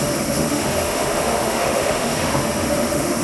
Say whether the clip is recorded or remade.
remade